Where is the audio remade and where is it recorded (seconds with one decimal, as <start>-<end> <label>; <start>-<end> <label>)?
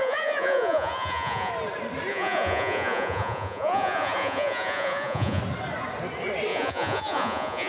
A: 0.0-1.5 remade; 1.5-2.1 recorded; 2.1-5.4 remade; 5.4-6.5 recorded; 6.5-7.7 remade